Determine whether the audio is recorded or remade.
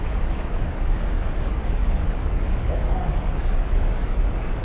remade